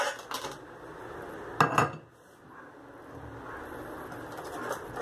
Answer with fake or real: real